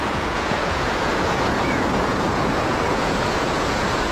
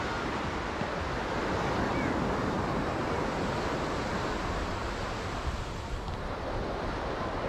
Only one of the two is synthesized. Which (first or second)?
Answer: first